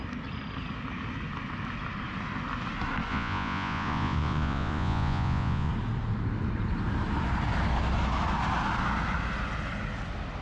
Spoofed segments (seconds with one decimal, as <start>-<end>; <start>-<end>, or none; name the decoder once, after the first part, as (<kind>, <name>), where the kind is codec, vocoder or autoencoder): 3.1-5.7 (vocoder, Vocos)